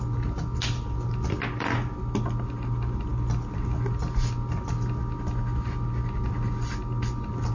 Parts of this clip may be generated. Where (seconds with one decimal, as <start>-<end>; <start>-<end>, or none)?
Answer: none